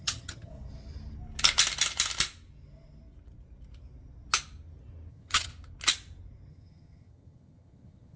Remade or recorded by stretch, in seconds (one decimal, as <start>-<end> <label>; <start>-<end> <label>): 0.0-0.5 remade; 0.5-5.1 recorded; 5.1-5.5 remade; 5.5-6.5 recorded; 6.5-8.2 remade